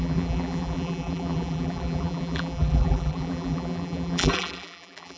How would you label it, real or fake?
fake